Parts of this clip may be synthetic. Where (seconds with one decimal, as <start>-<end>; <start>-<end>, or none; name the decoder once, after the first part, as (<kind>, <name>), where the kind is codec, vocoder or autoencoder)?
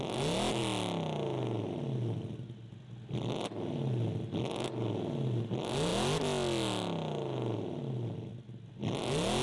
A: none